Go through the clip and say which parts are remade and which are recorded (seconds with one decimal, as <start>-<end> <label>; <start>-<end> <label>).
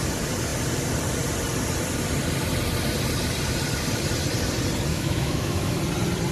0.0-4.9 recorded; 4.9-5.8 remade; 5.8-6.3 recorded